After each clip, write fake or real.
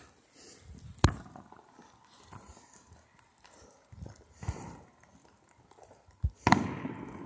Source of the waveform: real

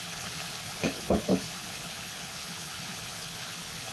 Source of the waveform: fake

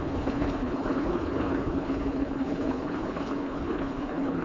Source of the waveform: fake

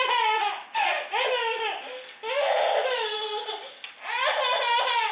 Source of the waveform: real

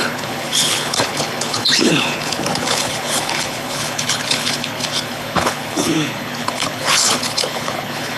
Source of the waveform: fake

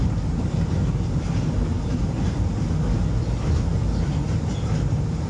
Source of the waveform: real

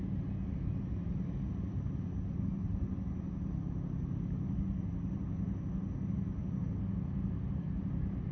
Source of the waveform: real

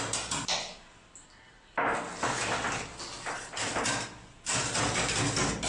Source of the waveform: real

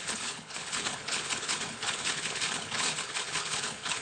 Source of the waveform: fake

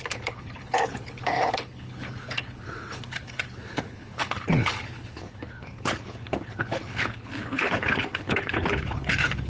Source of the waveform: fake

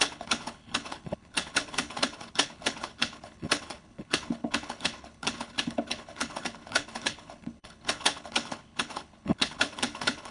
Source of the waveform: fake